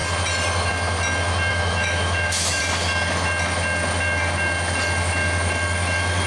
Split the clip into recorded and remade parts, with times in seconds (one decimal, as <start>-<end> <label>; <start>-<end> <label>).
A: 0.0-1.5 recorded; 1.5-2.6 remade; 2.6-6.3 recorded